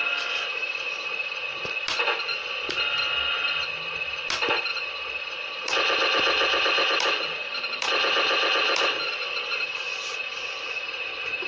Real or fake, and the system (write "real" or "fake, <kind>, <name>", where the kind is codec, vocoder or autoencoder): real